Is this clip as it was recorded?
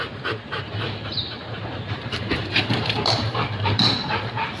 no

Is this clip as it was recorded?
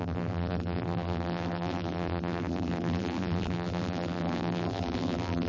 no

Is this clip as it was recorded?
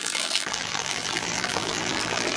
no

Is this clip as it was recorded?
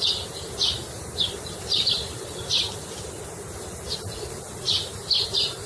yes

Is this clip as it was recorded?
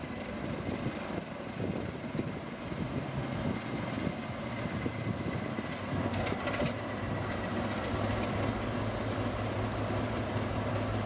no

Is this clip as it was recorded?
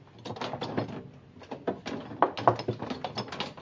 yes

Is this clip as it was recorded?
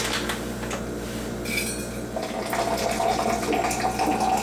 yes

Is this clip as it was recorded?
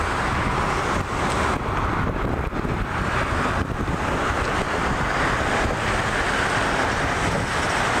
yes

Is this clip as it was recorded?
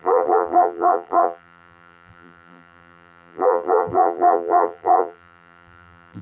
no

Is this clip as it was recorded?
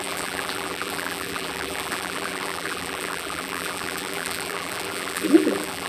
no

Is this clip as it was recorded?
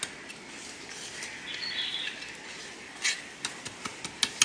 yes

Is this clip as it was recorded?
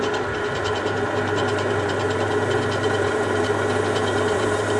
no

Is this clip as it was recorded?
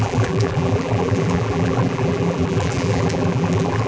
no